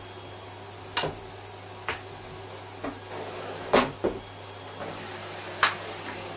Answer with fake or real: real